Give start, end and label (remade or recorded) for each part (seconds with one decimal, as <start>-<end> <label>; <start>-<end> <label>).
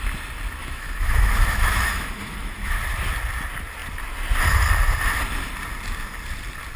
0.0-0.6 recorded; 0.6-2.8 remade; 2.8-6.8 recorded